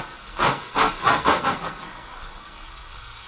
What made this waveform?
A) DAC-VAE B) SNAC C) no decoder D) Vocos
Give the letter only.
B